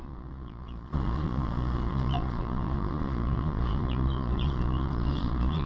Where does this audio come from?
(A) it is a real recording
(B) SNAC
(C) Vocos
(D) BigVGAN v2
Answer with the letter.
C